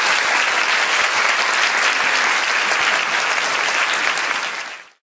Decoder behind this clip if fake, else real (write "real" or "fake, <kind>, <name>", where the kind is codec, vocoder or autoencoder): real